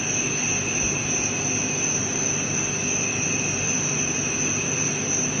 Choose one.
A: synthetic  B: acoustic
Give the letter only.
B